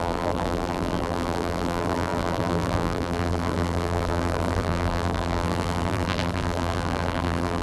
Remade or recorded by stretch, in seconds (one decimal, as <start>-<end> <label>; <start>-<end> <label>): 0.0-7.6 remade

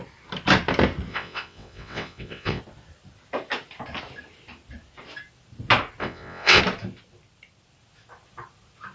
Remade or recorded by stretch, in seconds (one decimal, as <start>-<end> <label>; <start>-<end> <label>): 0.0-1.1 recorded; 1.1-2.6 remade; 2.6-6.0 recorded; 6.0-6.6 remade; 6.6-8.9 recorded

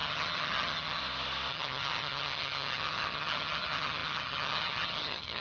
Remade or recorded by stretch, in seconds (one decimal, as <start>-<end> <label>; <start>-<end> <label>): 0.0-1.0 remade; 1.0-1.5 recorded; 1.5-5.4 remade

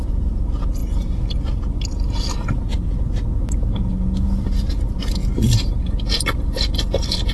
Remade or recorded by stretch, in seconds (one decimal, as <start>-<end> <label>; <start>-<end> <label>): 0.0-7.3 recorded

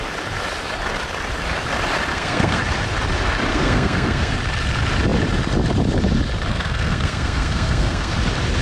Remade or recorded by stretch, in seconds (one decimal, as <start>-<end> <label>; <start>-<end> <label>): 0.0-2.1 recorded; 2.1-2.6 remade; 2.6-3.5 recorded; 3.5-4.3 remade; 4.3-6.5 recorded; 6.5-8.1 remade; 8.1-8.6 recorded

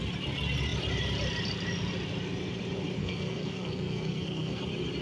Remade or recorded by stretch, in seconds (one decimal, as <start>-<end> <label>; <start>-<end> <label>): 0.0-3.0 recorded; 3.0-4.6 remade; 4.6-5.0 recorded